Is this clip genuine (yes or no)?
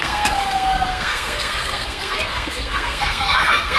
no